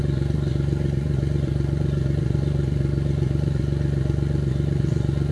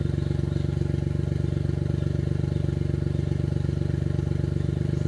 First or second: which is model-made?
first